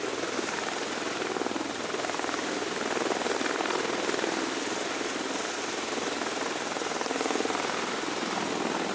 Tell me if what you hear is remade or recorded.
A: recorded